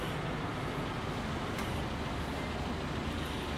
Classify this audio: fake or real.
real